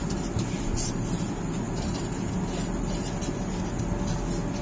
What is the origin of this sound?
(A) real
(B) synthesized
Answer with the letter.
A